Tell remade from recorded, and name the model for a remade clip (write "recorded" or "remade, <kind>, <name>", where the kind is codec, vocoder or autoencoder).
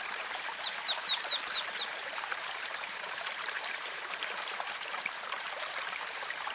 remade, vocoder, BigVGAN v2